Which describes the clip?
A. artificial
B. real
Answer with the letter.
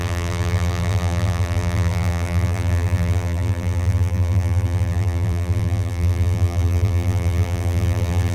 A